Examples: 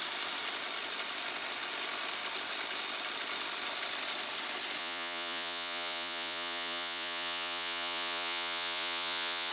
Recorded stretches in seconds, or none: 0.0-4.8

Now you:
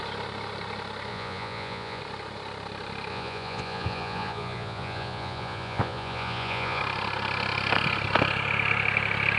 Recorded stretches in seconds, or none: 0.0-1.1; 2.0-3.1; 6.8-9.4

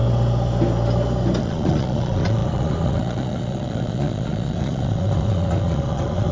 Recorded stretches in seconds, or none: 0.0-1.4

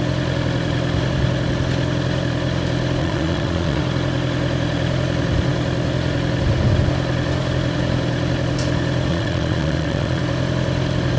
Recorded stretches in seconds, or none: 0.0-3.0; 3.8-9.1; 10.2-11.2

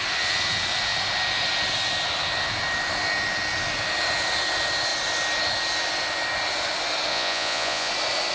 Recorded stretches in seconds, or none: 0.0-7.1; 7.9-8.3

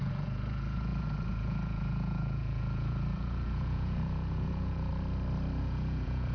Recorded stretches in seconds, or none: 4.9-5.6

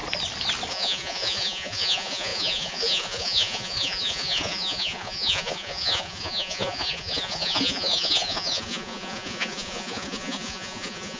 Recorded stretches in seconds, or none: 0.0-0.7

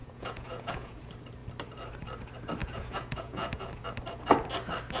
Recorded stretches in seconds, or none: 1.0-2.6; 3.7-5.0